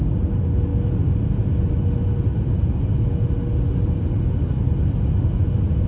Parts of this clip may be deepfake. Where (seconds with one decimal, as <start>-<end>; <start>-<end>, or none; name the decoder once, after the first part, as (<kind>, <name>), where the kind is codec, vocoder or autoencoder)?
none

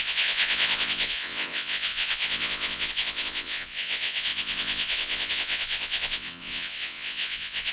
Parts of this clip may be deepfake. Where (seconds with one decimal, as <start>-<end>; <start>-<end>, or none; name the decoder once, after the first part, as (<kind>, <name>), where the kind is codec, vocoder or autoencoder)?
0.0-7.7 (vocoder, WaveNeXt)

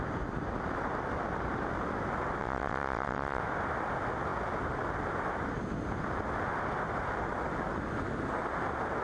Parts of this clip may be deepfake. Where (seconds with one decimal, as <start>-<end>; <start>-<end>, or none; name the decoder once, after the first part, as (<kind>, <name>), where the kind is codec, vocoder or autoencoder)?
2.4-3.4 (vocoder, WaveNeXt)

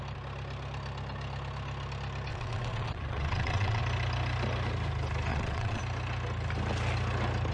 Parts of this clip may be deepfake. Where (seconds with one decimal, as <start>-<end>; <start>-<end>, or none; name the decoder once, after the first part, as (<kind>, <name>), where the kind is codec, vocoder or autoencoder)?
2.3-3.8 (vocoder, WaveNeXt); 5.3-5.8